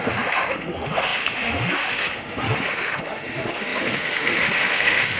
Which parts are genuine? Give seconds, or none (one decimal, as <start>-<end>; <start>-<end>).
none